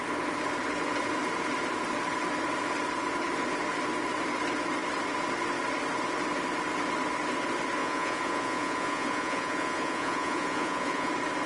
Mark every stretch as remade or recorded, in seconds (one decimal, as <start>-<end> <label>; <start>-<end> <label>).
0.0-7.8 recorded; 7.8-11.1 remade; 11.1-11.5 recorded